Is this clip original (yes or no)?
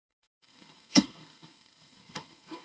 no